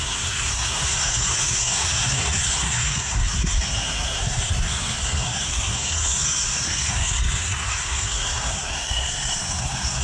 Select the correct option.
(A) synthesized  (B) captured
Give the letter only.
A